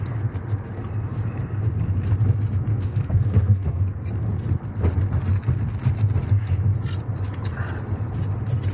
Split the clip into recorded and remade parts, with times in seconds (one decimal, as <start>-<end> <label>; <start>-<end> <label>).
0.0-2.7 recorded; 2.7-3.8 remade; 3.8-8.7 recorded